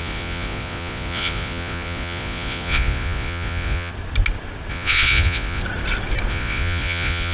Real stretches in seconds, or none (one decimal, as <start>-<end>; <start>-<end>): 3.9-4.7; 5.6-6.3